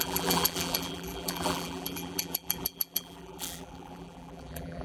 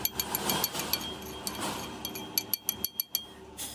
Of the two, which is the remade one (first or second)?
first